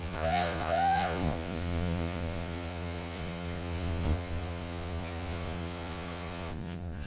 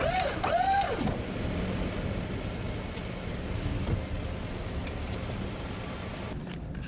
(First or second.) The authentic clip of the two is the second